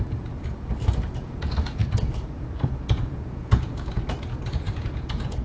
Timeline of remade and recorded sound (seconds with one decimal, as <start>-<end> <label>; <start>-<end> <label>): 0.0-5.4 remade